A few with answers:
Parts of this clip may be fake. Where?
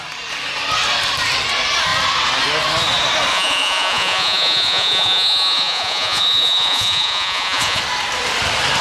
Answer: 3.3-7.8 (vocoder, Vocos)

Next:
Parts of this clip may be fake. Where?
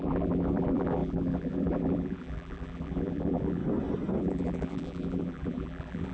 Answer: 0.0-3.6 (vocoder, BigVGAN v2); 4.2-6.1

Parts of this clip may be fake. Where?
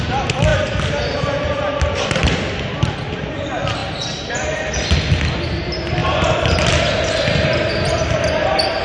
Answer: none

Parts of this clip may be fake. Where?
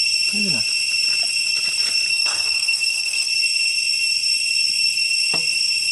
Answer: 2.1-3.3 (codec, SNAC)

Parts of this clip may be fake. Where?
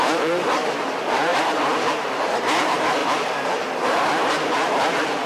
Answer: 0.0-3.0 (vocoder, BigVGAN v2); 3.8-5.3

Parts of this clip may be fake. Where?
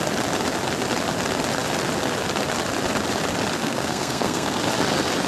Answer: 3.6-4.6 (codec, SNAC)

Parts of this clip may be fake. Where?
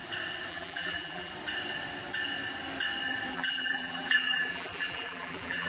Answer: 0.5-1.3 (vocoder, BigVGAN v2); 3.3-5.7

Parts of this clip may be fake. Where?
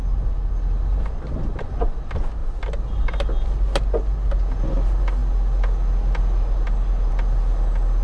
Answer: none